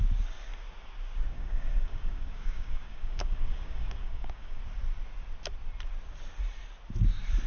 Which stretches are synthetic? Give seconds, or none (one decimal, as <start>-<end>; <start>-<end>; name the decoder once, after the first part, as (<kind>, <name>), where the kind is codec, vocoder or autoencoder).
1.3-4.6 (codec, DAC)